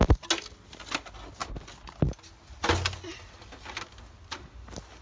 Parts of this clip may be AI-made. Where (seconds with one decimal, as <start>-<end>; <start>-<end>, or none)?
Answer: none